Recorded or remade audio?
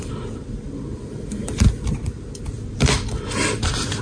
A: remade